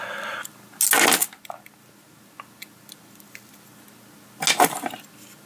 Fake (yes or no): no